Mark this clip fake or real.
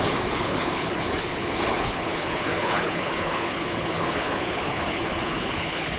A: fake